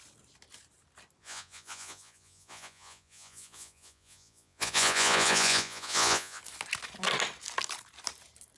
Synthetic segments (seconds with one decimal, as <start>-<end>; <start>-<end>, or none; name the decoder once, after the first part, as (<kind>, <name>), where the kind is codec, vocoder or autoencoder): 1.2-6.4 (vocoder, Vocos)